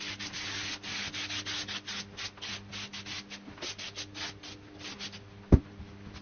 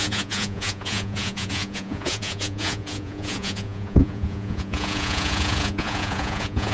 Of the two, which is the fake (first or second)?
second